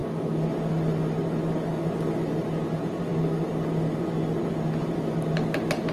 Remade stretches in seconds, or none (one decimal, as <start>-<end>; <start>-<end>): none